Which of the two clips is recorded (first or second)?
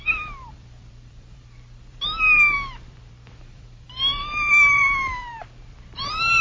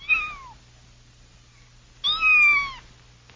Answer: second